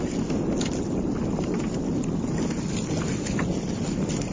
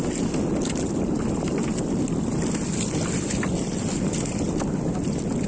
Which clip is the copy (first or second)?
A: second